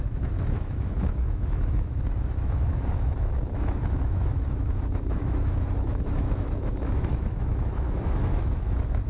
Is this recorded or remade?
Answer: remade